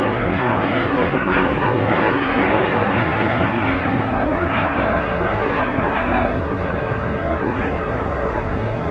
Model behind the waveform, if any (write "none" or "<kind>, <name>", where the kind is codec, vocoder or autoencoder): codec, SNAC